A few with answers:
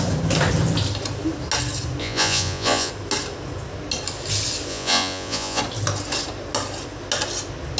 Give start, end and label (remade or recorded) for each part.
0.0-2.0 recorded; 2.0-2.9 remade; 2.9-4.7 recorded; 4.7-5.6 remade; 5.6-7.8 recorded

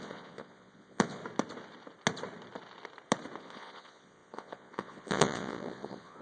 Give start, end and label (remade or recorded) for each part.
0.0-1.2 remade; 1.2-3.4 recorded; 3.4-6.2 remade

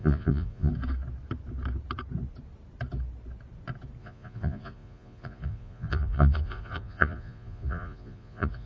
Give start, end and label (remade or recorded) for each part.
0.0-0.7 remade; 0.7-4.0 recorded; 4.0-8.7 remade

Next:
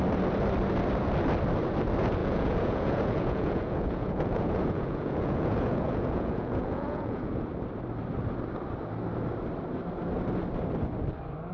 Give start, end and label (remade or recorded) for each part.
0.0-2.2 recorded; 2.2-7.3 remade; 7.3-11.5 recorded